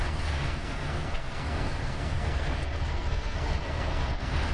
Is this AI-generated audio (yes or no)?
yes